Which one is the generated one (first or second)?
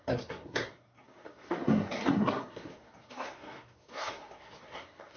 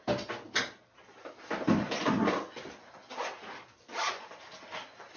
first